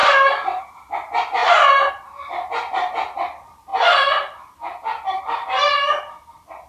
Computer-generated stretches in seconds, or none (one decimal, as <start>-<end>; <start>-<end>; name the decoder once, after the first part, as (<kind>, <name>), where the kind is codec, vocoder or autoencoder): 0.6-1.4 (vocoder, BigVGAN v2); 1.9-6.7